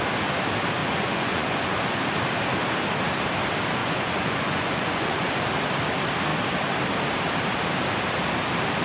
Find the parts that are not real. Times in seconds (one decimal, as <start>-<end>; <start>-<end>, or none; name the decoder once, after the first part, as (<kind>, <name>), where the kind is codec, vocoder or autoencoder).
0.8-2.0 (vocoder, Vocos); 3.8-5.3